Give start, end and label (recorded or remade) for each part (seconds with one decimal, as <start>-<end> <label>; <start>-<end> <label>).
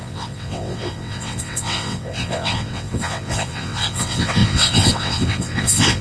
0.0-6.0 remade